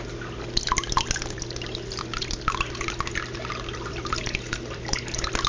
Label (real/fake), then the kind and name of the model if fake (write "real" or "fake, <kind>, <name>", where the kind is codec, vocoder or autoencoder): real